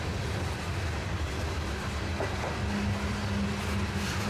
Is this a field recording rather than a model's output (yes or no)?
yes